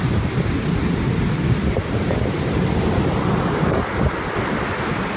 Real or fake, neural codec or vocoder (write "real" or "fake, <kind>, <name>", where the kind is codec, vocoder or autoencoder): real